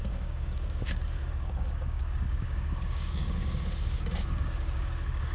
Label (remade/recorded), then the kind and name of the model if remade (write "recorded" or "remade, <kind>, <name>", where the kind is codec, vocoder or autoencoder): remade, codec, DAC